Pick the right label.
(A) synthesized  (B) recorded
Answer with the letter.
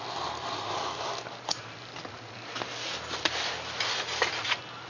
B